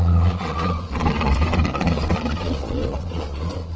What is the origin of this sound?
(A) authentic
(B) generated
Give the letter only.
B